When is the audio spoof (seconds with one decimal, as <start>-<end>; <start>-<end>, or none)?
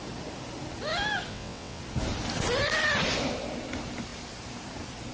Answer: 1.3-1.8